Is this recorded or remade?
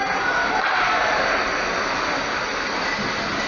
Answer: recorded